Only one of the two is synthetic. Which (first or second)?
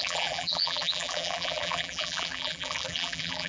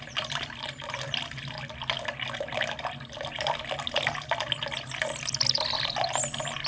first